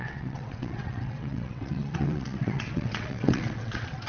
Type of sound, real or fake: fake